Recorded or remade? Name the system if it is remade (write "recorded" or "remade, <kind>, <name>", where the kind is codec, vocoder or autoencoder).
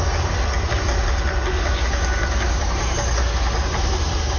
recorded